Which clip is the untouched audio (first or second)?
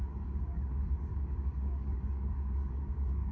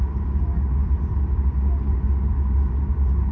second